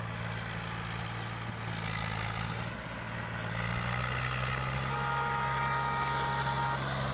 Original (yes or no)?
yes